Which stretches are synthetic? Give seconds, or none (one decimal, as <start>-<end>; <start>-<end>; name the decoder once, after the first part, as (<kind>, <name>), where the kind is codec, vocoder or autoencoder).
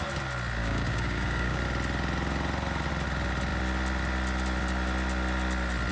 0.6-1.6 (codec, DAC)